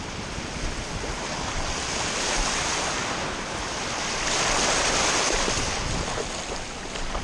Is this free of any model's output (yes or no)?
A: yes